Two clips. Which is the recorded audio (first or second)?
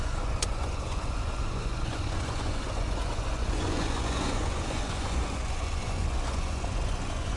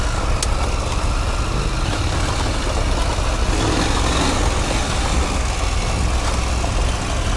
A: second